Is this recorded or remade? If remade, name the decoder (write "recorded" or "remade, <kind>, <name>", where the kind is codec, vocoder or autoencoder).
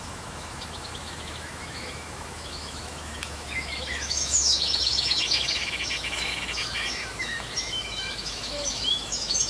remade, autoencoder, DAC-VAE